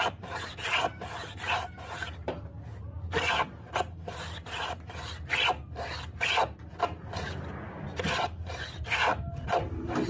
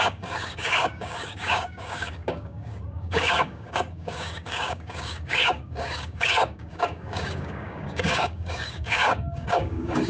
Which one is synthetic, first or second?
second